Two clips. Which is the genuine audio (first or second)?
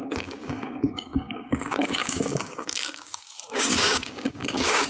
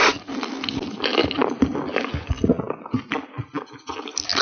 second